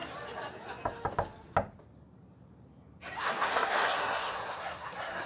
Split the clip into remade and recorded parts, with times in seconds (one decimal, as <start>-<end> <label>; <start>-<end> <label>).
0.0-3.2 recorded; 3.2-5.3 remade